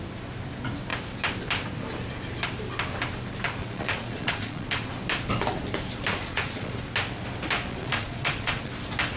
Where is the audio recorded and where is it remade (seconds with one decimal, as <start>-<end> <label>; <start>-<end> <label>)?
0.0-3.6 recorded; 3.6-4.9 remade; 4.9-6.1 recorded; 6.1-6.7 remade; 6.7-7.7 recorded; 7.7-8.7 remade; 8.7-9.2 recorded